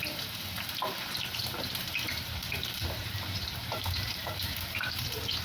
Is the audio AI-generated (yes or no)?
yes